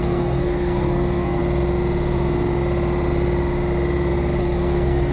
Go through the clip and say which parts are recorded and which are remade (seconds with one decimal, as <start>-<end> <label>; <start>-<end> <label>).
0.0-1.4 remade; 1.4-4.4 recorded; 4.4-5.1 remade